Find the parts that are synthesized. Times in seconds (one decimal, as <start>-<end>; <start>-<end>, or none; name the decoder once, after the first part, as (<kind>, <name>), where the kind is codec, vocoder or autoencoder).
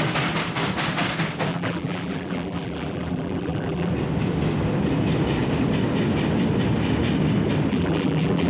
1.5-3.9 (vocoder, BigVGAN v2); 7.7-8.5